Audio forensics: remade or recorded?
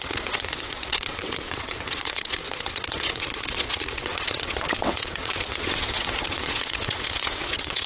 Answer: remade